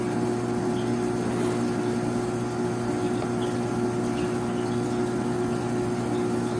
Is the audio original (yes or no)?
yes